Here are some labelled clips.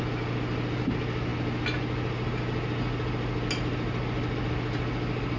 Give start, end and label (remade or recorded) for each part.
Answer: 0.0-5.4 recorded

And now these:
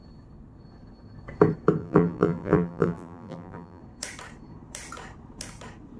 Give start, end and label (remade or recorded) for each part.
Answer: 0.0-1.8 recorded; 1.8-3.8 remade; 3.8-6.0 recorded

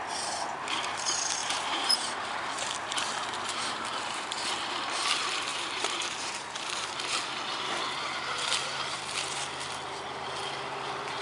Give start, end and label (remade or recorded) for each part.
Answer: 0.0-1.4 recorded; 1.4-4.4 remade; 4.4-5.5 recorded; 5.5-6.9 remade; 6.9-8.7 recorded; 8.7-9.4 remade; 9.4-11.2 recorded

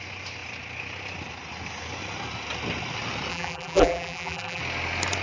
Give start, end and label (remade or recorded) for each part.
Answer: 0.0-3.3 recorded; 3.3-4.6 remade; 4.6-5.2 recorded

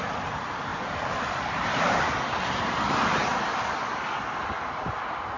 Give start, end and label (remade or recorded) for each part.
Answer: 0.0-0.7 recorded; 0.7-2.0 remade; 2.0-5.4 recorded

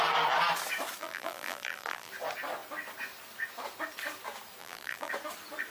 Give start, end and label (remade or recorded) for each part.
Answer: 0.0-1.0 recorded; 1.0-2.1 remade; 2.1-4.6 recorded; 4.6-5.1 remade; 5.1-5.7 recorded